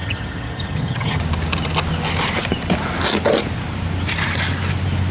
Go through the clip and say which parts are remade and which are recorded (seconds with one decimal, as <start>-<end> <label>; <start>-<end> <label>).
0.0-1.2 remade; 1.2-5.1 recorded